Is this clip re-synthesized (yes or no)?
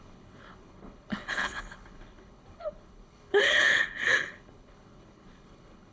yes